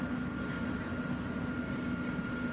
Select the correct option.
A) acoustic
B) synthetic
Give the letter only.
A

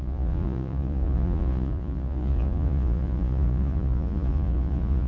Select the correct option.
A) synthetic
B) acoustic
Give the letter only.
A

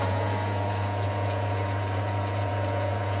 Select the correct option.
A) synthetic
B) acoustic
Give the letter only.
A